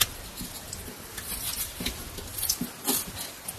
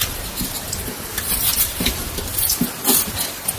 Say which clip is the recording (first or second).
first